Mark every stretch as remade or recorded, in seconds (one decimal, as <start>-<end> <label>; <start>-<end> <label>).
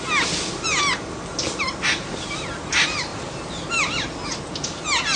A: 0.0-5.2 recorded